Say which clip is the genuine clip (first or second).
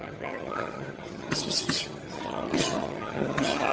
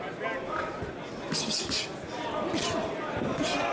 second